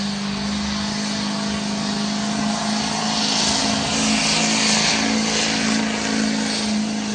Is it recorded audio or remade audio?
recorded